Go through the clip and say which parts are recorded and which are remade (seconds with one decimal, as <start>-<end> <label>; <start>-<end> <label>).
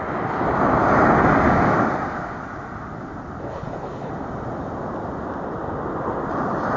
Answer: 0.0-3.5 recorded; 3.5-4.1 remade; 4.1-6.8 recorded